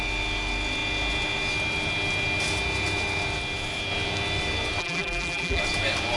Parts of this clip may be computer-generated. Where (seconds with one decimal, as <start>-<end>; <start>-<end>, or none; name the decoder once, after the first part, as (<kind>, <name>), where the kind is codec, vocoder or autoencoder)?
4.8-5.6 (vocoder, BigVGAN v2)